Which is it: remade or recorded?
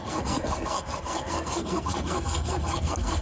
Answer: remade